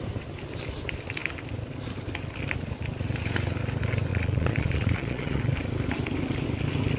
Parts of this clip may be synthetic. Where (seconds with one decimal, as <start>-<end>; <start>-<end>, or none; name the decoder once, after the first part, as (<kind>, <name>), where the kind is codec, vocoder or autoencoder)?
4.1-5.4 (vocoder, Vocos)

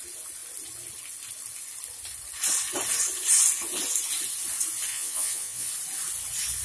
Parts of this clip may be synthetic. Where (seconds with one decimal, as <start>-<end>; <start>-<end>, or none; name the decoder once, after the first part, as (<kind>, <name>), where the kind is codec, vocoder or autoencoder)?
4.9-5.7 (vocoder, Vocos)